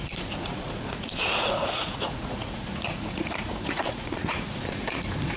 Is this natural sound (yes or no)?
no